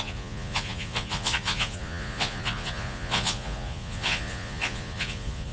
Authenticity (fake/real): fake